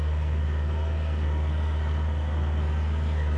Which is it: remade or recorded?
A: remade